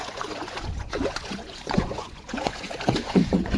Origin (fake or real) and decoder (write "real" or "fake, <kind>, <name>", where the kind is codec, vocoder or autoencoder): fake, vocoder, Vocos